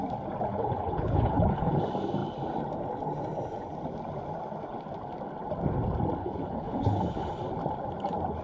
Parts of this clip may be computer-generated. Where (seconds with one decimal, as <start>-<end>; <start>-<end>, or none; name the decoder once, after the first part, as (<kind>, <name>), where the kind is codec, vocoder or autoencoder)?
0.5-1.8 (codec, HILCodec); 6.2-7.4